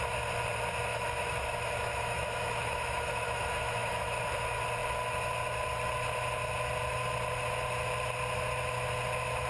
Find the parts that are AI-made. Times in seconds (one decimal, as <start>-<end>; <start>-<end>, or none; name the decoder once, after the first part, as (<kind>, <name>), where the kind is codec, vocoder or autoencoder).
0.9-4.2 (autoencoder, DAC-VAE)